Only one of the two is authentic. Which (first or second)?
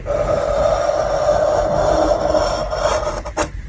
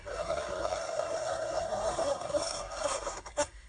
first